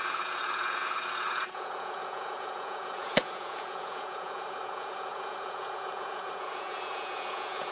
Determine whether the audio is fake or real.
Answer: fake